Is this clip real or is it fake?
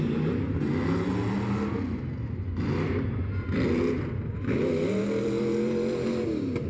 real